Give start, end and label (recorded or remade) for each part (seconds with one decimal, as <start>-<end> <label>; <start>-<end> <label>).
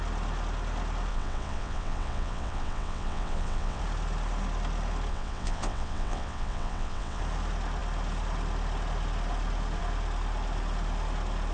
0.0-1.1 recorded; 1.1-3.8 remade; 3.8-5.1 recorded; 5.1-7.2 remade; 7.2-11.5 recorded